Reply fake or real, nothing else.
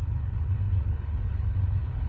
fake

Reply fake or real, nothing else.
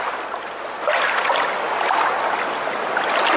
real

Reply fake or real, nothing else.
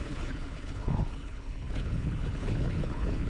fake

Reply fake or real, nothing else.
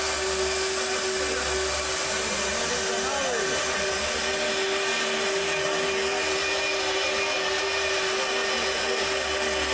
real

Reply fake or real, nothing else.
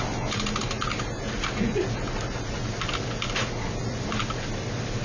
real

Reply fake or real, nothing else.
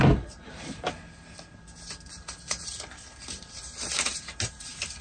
real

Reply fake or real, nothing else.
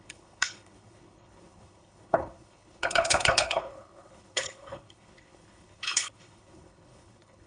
fake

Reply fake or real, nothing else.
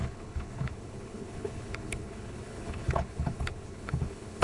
fake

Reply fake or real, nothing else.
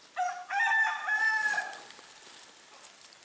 real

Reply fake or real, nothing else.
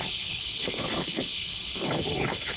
fake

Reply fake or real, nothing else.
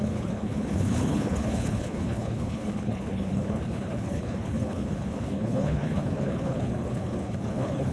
fake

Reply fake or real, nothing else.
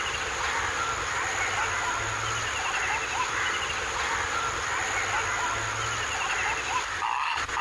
real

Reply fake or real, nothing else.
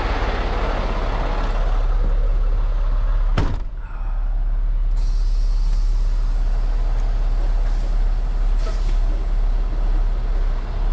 real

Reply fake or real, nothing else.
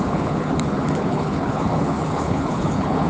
fake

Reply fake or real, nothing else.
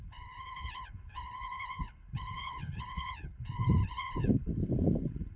fake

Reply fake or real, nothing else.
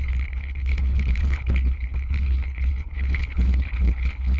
fake